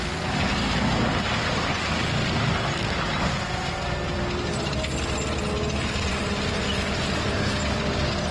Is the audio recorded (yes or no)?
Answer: yes